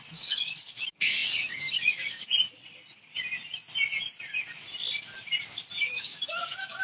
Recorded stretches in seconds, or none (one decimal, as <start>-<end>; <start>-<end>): 2.3-5.8